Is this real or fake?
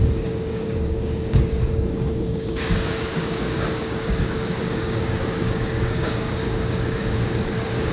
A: fake